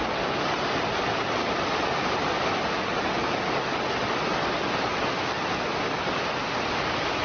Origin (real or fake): real